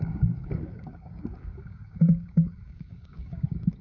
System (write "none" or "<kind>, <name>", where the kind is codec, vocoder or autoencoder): codec, DAC